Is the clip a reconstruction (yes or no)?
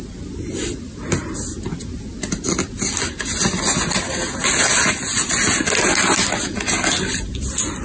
no